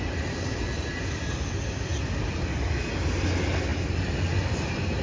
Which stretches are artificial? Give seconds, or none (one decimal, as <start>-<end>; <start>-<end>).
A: none